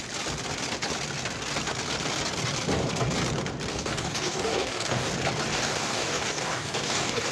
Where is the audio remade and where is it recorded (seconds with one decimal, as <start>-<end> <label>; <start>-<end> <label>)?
0.0-3.7 recorded; 3.7-5.1 remade; 5.1-5.5 recorded; 5.5-7.3 remade